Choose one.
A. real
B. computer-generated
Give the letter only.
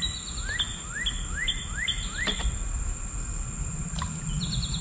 A